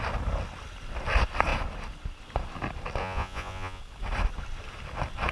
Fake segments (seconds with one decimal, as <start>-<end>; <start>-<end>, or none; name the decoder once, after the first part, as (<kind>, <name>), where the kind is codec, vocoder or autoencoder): 3.0-3.8 (vocoder, Vocos)